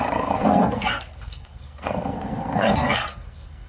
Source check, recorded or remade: remade